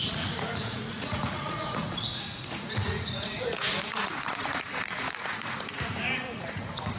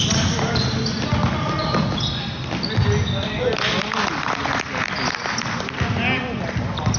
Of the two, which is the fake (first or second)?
first